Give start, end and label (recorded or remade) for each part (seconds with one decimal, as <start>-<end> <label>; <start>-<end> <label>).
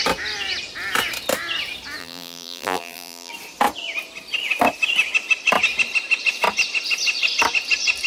0.0-2.0 recorded; 2.0-3.3 remade; 3.3-8.1 recorded